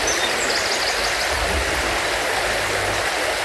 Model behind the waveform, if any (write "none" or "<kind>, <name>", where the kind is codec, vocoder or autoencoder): none